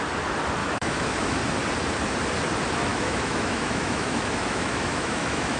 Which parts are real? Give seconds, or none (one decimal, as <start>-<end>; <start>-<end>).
0.0-0.6; 1.4-2.9